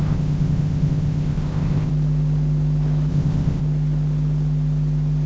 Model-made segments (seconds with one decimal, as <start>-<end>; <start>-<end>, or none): 0.0-1.9; 3.1-3.6